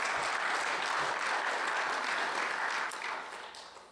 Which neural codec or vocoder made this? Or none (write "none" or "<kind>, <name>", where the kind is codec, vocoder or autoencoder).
none